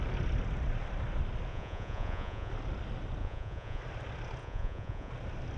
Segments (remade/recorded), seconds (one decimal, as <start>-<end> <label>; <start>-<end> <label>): 0.0-1.5 recorded; 1.5-2.5 remade; 2.5-3.2 recorded; 3.2-3.8 remade; 3.8-4.4 recorded; 4.4-5.1 remade; 5.1-5.6 recorded

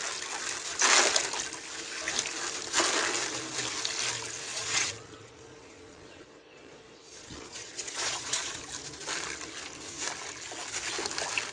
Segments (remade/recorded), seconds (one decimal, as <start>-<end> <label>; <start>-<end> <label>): 0.0-4.5 recorded; 4.5-8.6 remade; 8.6-11.5 recorded

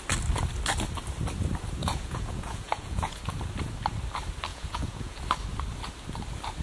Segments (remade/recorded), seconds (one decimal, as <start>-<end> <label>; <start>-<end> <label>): 0.0-1.8 recorded; 1.8-3.2 remade; 3.2-4.5 recorded; 4.5-5.2 remade; 5.2-6.6 recorded

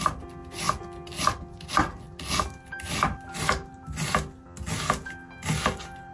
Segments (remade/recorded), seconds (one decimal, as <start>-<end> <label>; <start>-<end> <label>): 0.0-6.1 recorded

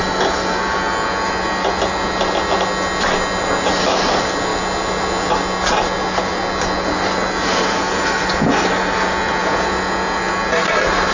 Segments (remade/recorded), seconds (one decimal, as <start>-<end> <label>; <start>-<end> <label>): 0.0-9.4 recorded; 9.4-10.2 remade; 10.2-11.1 recorded

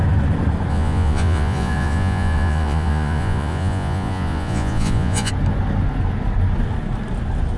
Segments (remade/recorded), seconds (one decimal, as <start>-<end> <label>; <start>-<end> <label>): 0.0-0.7 recorded; 0.7-5.3 remade; 5.3-7.6 recorded

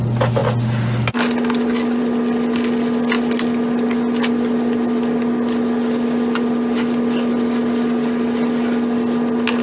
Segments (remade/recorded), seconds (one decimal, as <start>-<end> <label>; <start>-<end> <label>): 0.0-9.6 recorded